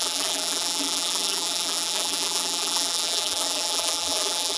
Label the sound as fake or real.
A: fake